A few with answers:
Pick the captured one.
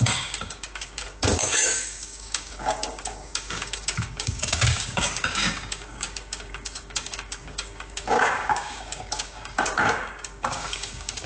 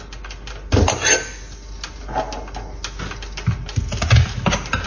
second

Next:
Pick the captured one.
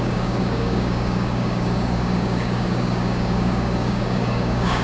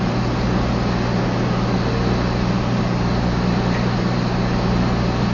second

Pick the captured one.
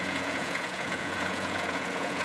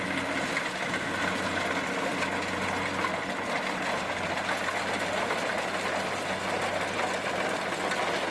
second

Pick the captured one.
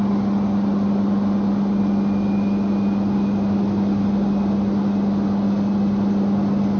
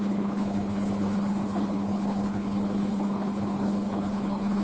first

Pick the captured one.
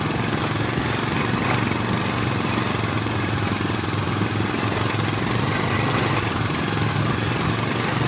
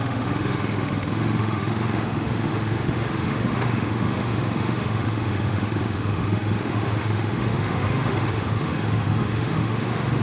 first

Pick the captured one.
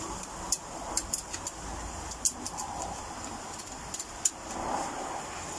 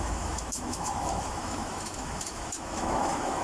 first